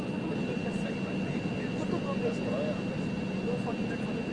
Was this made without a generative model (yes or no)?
yes